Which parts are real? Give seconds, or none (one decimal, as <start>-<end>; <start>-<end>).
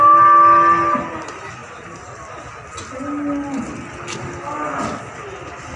0.0-5.8